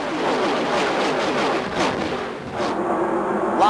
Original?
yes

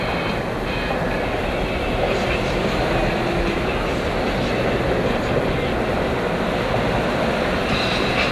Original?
yes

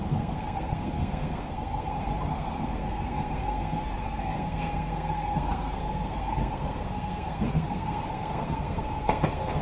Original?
no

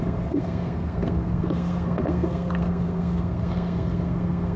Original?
no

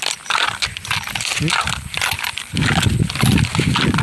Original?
yes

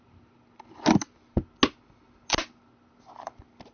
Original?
yes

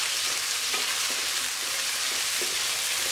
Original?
yes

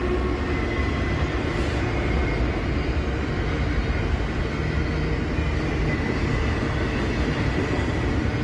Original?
yes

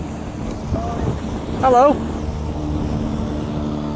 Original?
yes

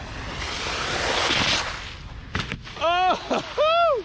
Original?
yes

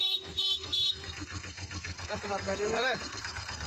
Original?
no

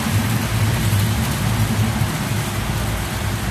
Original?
yes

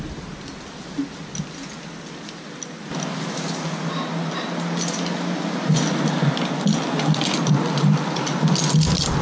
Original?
yes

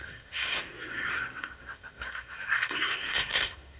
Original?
no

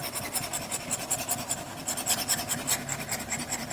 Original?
yes